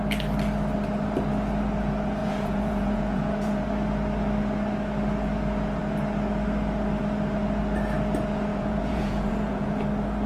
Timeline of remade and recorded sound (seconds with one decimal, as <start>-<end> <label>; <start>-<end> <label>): 0.0-2.2 recorded; 2.2-3.6 remade; 3.6-8.5 recorded; 8.5-9.8 remade; 9.8-10.3 recorded